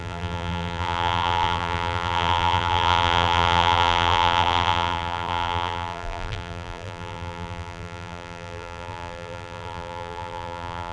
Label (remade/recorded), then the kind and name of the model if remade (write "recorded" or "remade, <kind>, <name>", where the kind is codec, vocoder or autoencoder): remade, vocoder, BigVGAN v2